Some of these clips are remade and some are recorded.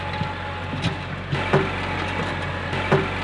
recorded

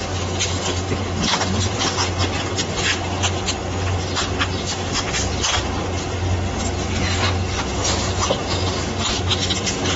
recorded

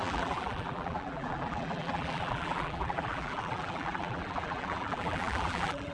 remade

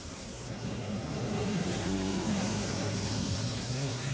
remade